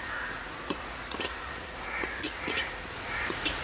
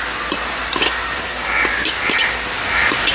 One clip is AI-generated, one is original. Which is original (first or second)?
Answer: second